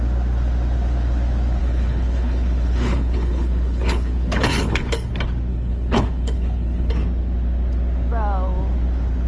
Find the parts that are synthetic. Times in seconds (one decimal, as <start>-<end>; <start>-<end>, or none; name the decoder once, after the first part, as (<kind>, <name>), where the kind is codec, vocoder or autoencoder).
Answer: 1.6-5.1 (codec, HILCodec); 5.5-6.9